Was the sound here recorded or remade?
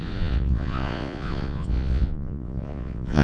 remade